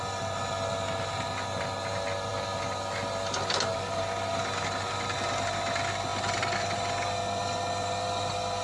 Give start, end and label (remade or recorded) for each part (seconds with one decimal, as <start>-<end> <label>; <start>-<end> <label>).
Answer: 0.0-8.6 recorded

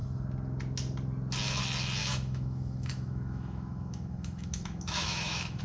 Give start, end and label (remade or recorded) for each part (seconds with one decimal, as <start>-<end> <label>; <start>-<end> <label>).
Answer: 0.0-2.0 recorded; 2.0-5.6 remade

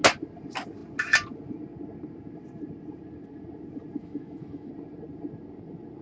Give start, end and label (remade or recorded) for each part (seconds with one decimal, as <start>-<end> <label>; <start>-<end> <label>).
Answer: 0.0-4.0 recorded; 4.0-4.7 remade; 4.7-6.0 recorded

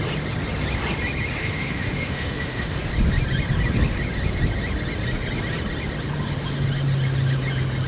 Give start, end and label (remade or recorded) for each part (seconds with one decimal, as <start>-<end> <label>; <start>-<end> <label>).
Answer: 0.0-1.4 recorded; 1.4-2.8 remade; 2.8-7.9 recorded